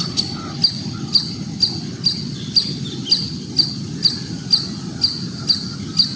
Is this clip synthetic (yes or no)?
no